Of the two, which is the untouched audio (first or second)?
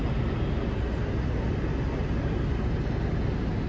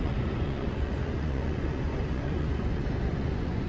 first